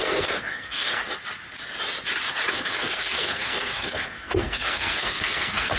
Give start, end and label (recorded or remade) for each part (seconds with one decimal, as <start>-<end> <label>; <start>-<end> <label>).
0.0-1.0 remade; 1.0-2.5 recorded; 2.5-5.8 remade